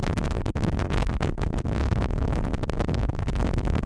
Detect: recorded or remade remade